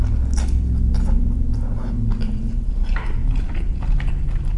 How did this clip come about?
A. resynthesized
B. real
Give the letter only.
B